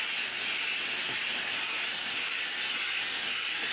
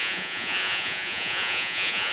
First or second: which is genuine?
first